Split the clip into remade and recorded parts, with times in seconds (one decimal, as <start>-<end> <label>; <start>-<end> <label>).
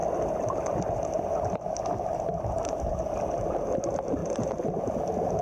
0.0-5.4 recorded